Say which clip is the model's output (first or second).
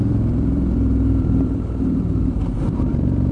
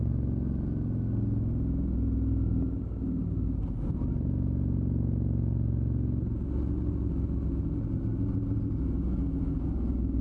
first